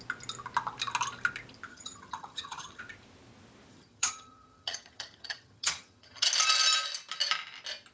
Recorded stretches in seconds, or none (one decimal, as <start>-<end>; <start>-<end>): 0.0-1.7; 2.8-3.7; 6.3-7.9